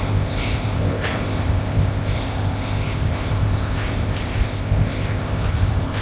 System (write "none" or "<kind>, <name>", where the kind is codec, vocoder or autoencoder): codec, ZipCodec